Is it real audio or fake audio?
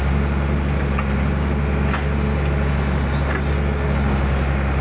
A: real